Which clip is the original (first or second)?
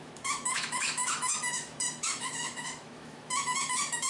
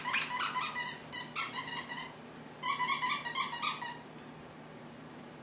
second